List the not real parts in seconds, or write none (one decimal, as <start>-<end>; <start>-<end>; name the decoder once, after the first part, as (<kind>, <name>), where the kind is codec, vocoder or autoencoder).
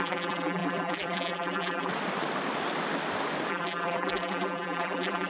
0.0-1.9 (vocoder, BigVGAN v2); 3.5-5.3